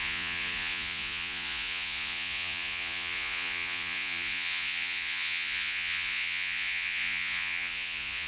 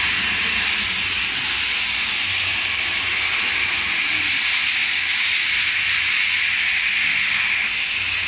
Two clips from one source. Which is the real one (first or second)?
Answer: second